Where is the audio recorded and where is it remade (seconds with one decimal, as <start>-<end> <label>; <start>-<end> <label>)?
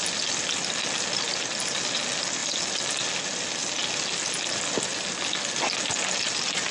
0.0-6.7 recorded